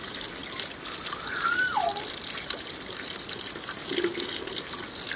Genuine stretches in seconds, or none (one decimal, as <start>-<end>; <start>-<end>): 0.0-5.2